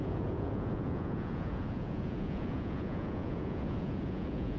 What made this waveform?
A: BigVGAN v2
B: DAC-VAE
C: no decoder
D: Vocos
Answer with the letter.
D